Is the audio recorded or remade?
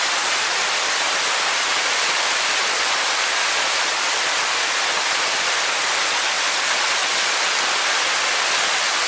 recorded